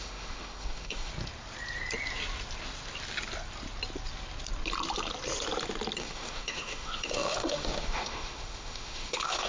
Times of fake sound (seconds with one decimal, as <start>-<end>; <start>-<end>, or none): 0.0-1.1; 6.0-9.5